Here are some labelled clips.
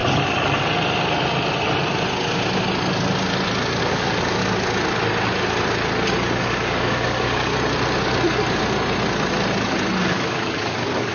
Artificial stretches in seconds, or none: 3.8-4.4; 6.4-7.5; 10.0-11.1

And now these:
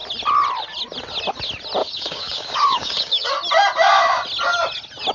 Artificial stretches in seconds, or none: 1.8-3.3

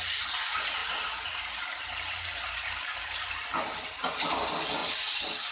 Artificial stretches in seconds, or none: none

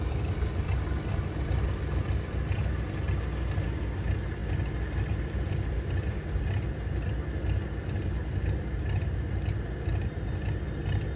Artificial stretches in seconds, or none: none

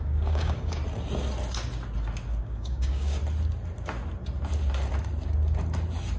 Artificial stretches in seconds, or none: 0.0-0.8; 2.4-3.2

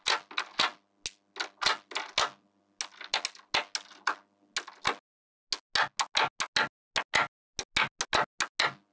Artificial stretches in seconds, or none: none

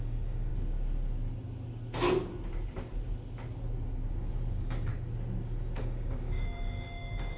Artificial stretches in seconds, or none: 0.0-0.5; 4.5-4.9; 5.8-7.4

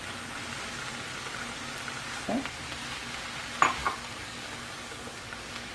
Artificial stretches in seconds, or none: 3.8-5.7